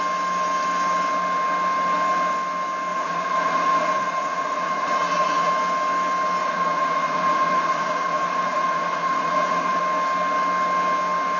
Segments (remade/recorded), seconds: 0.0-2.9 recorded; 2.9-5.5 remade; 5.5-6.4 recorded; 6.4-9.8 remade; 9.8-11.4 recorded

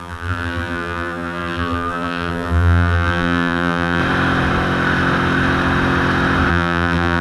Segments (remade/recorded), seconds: 0.0-4.0 remade; 4.0-6.5 recorded; 6.5-7.2 remade

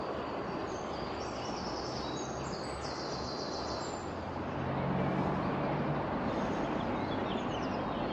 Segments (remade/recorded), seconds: 0.0-8.1 recorded

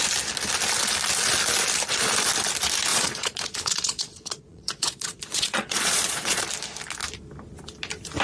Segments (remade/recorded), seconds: 0.0-2.9 recorded; 2.9-6.4 remade; 6.4-8.2 recorded

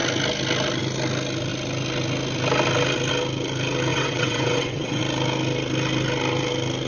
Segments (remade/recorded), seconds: 0.0-3.9 recorded; 3.9-5.0 remade; 5.0-6.9 recorded